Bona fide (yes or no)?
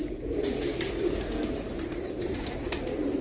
no